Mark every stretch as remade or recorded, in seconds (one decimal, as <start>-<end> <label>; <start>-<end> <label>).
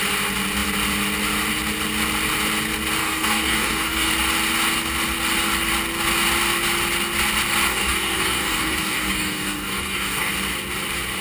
0.0-3.0 recorded; 3.0-4.1 remade; 4.1-7.7 recorded; 7.7-10.3 remade; 10.3-11.2 recorded